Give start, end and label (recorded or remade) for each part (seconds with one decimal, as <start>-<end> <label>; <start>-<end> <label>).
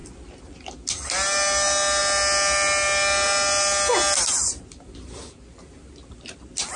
0.0-6.8 recorded